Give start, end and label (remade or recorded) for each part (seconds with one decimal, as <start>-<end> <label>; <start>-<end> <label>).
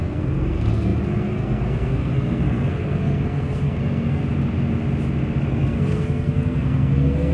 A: 0.0-4.2 remade; 4.2-5.5 recorded; 5.5-7.3 remade